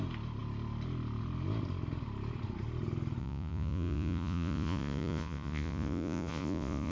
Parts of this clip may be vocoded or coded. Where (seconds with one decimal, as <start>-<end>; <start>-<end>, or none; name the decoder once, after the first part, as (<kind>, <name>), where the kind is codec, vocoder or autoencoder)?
3.2-6.9 (vocoder, Vocos)